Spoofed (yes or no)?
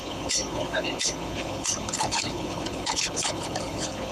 yes